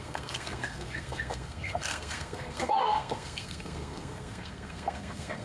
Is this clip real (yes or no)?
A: no